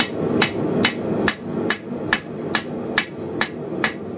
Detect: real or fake real